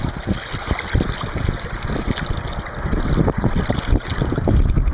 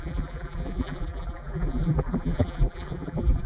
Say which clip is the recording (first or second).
first